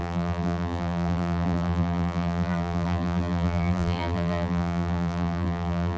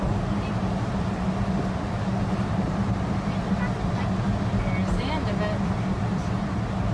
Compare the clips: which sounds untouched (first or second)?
second